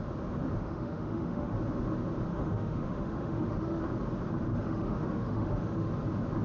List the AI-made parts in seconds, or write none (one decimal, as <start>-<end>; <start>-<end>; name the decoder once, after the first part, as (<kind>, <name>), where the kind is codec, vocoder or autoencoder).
0.6-1.5 (autoencoder, DAC-VAE); 2.3-3.8; 4.5-5.9